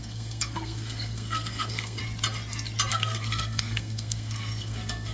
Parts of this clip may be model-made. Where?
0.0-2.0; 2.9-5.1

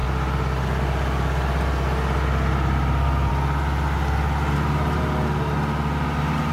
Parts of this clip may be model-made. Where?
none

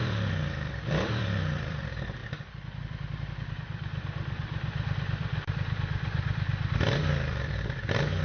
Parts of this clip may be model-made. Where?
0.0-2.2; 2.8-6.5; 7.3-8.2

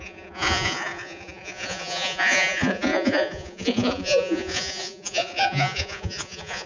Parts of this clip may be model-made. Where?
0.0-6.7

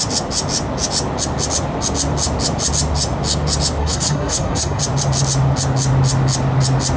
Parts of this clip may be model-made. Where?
3.8-4.8

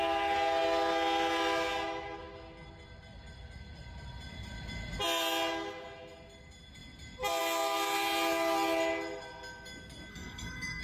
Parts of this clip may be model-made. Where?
10.1-10.8